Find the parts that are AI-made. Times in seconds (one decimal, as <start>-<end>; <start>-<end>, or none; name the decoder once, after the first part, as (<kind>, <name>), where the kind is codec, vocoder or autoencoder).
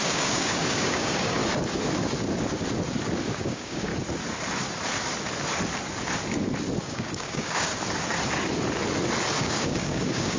0.0-1.4 (codec, DAC); 3.3-3.9; 6.8-7.7; 9.4-10.4